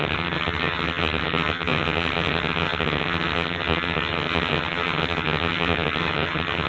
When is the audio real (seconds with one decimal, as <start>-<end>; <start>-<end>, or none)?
none